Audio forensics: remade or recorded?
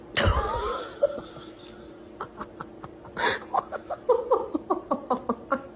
recorded